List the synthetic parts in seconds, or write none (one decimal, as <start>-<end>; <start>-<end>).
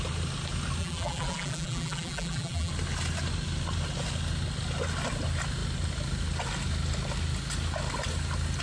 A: 0.8-2.7